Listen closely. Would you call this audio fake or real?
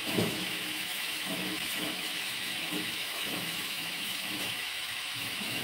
fake